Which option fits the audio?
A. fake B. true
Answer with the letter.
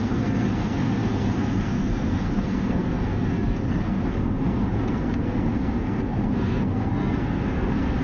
A